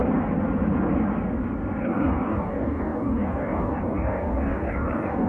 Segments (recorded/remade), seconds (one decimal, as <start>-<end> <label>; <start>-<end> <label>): 0.0-1.8 recorded; 1.8-5.3 remade

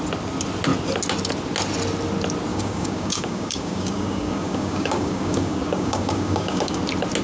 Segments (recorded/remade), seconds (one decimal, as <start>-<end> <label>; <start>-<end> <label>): 0.0-2.5 recorded; 2.5-6.8 remade; 6.8-7.2 recorded

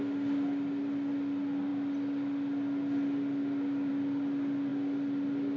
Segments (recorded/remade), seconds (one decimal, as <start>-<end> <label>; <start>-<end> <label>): 0.0-5.6 recorded

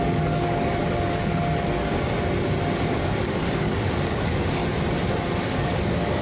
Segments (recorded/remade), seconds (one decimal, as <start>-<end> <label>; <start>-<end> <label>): 0.0-1.9 remade; 1.9-2.9 recorded; 2.9-4.6 remade; 4.6-5.5 recorded; 5.5-6.2 remade

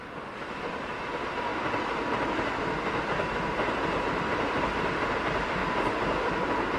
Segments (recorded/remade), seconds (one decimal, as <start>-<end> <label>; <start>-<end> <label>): 0.0-6.8 recorded

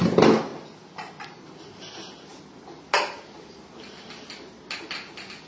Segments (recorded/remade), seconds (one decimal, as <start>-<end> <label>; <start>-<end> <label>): 0.0-5.5 recorded